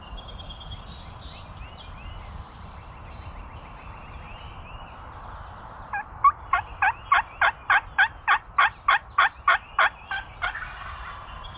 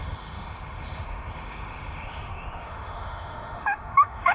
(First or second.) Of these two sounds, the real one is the first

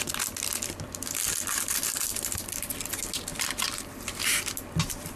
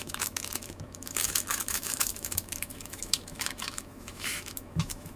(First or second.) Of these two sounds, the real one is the first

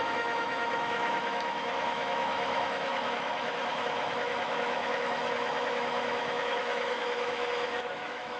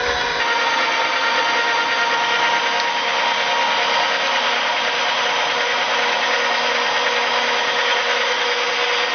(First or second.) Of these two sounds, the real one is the second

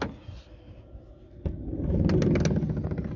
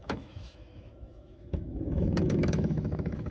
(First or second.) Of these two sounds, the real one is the first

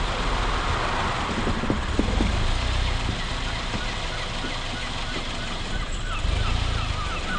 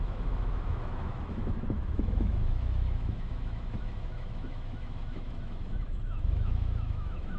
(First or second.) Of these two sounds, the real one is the first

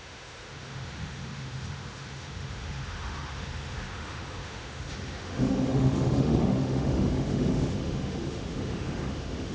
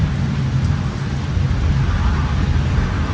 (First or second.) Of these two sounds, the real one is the second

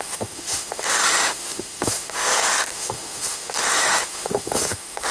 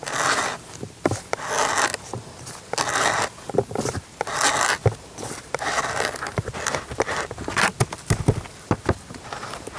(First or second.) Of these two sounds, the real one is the second